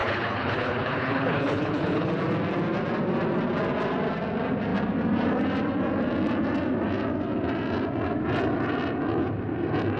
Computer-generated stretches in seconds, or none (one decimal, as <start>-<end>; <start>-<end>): 0.0-2.1